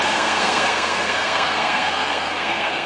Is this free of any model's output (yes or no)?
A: no